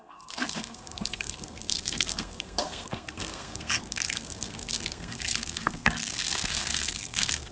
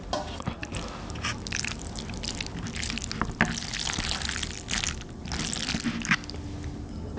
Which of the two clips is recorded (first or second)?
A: second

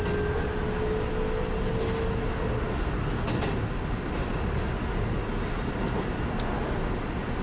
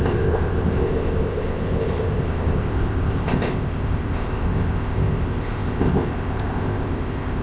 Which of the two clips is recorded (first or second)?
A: first